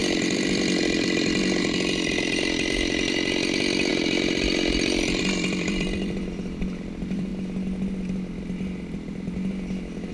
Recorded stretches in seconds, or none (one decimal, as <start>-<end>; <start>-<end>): 7.3-10.1